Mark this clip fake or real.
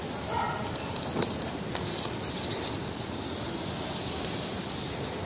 real